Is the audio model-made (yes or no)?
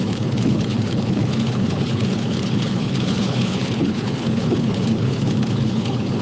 yes